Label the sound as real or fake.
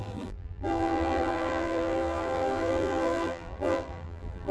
fake